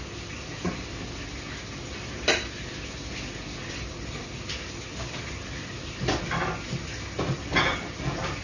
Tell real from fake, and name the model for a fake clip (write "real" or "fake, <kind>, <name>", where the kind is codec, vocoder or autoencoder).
real